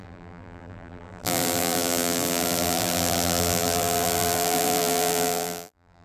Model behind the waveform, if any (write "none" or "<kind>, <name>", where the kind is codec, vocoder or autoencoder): vocoder, BigVGAN v2